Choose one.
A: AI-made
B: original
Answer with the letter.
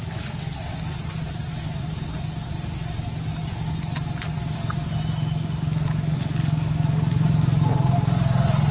B